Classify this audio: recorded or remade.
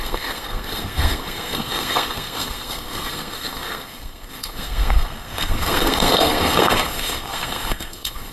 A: remade